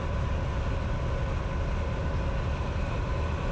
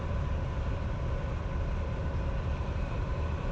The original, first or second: first